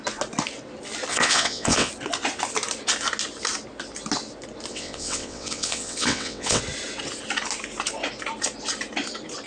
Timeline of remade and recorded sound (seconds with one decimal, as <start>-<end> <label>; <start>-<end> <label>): 0.0-1.1 recorded; 1.1-1.9 remade; 1.9-4.7 recorded; 4.7-6.6 remade; 6.6-9.5 recorded